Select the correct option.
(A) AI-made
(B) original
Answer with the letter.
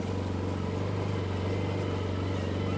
B